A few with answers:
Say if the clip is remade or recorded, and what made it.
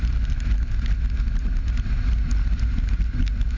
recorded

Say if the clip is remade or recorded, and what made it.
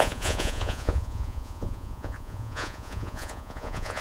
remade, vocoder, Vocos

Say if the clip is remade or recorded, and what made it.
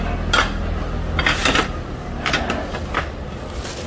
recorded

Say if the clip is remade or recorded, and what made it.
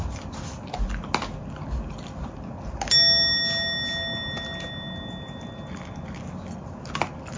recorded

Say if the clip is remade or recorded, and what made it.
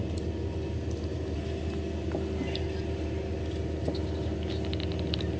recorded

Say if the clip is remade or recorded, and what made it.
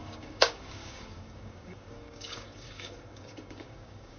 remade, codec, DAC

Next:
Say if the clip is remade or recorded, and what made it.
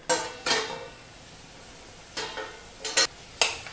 recorded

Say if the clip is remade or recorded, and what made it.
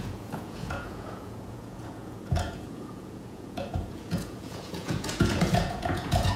remade, vocoder, Vocos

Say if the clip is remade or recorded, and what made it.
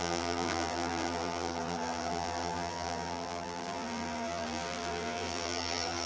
remade, vocoder, BigVGAN v2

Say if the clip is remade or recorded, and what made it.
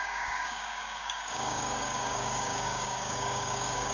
remade, codec, DAC